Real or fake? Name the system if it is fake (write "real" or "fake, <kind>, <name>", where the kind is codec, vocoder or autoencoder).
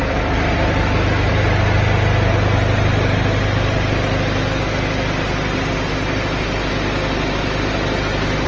real